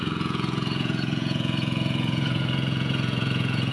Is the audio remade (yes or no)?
yes